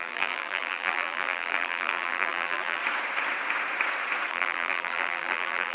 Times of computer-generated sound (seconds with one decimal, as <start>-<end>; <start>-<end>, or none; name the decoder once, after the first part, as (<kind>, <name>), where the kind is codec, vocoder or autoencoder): 0.0-2.8 (vocoder, BigVGAN v2); 4.3-5.7